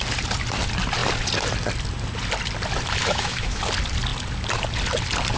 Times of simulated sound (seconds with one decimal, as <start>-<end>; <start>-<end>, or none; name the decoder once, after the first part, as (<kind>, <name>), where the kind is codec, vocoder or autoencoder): 3.0-3.6 (autoencoder, DAC-VAE)